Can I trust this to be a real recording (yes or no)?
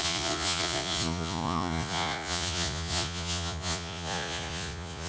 no